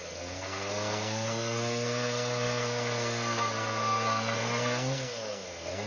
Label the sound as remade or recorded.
remade